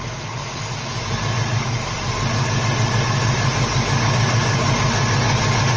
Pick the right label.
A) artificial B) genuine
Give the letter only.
B